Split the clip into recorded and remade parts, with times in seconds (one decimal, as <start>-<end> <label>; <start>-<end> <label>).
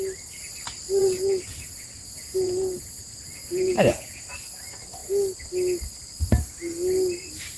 0.0-1.0 recorded; 1.0-4.2 remade; 4.2-7.6 recorded